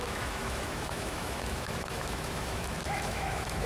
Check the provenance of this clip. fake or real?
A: fake